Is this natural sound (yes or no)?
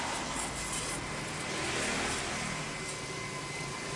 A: yes